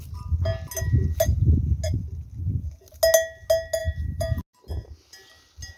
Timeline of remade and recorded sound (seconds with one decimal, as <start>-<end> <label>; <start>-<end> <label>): 0.0-3.8 recorded; 3.8-4.4 remade; 4.4-5.8 recorded